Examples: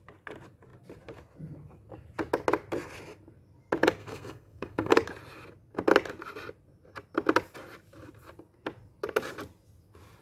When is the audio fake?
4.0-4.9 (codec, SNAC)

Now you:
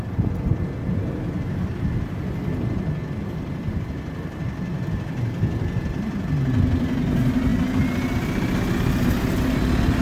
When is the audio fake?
none

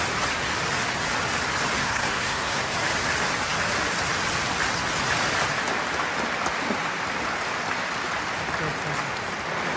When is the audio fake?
1.8-2.7 (codec, SNAC)

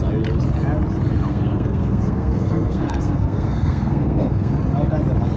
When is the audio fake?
1.3-4.5 (codec, SNAC)

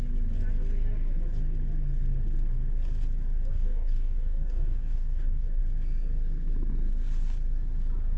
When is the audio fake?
3.5-5.6 (codec, DAC)

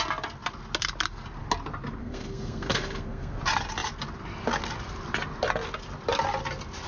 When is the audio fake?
2.0-3.4 (codec, SNAC)

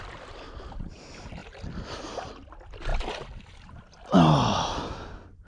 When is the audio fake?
none